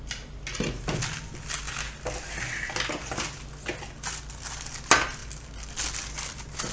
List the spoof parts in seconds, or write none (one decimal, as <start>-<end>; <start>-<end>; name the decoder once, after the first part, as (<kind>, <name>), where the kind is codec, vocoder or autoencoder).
none